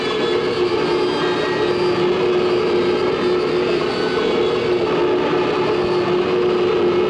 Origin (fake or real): real